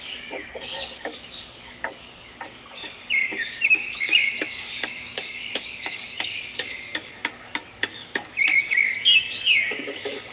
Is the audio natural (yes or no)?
no